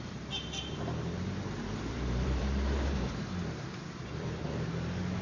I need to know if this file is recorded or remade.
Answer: remade